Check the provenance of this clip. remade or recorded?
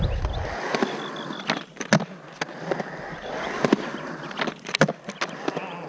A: recorded